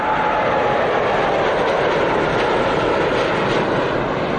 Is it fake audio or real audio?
real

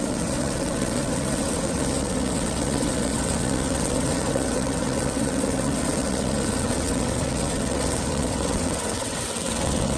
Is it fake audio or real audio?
fake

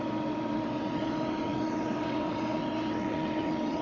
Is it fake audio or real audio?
fake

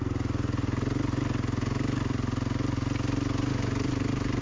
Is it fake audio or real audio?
real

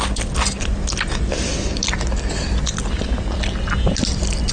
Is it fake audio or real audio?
real